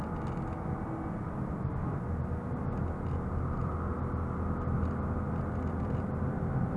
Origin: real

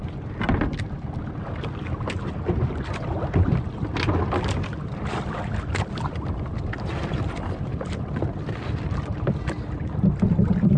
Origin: real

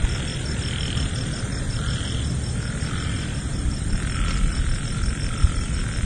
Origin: real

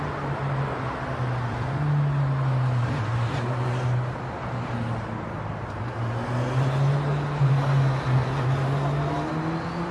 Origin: real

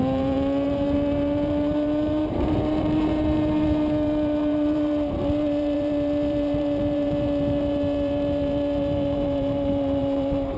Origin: fake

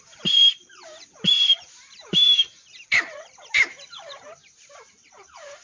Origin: fake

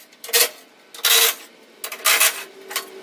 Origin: real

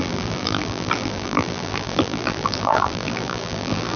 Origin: fake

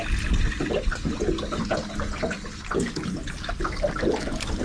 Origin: real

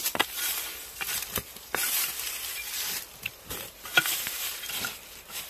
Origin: fake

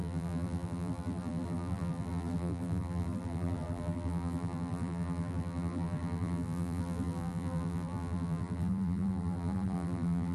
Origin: fake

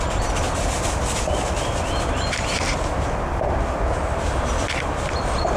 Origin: real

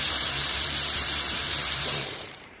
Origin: fake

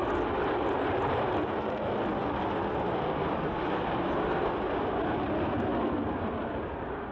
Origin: real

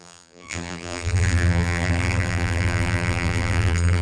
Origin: fake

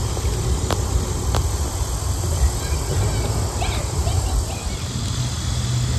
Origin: real